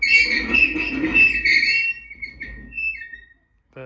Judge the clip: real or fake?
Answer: real